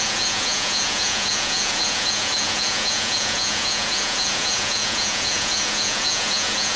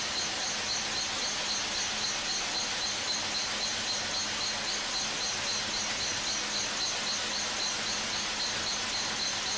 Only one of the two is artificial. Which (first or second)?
first